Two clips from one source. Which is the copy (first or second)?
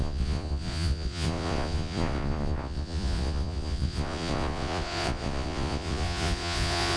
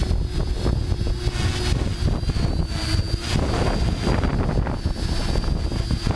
first